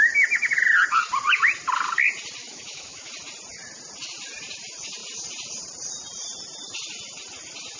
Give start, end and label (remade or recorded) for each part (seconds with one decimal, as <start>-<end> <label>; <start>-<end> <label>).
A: 0.0-2.4 recorded; 2.4-3.1 remade; 3.1-7.8 recorded